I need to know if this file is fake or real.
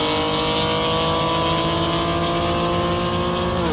real